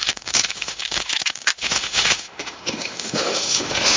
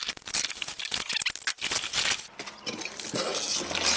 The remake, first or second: first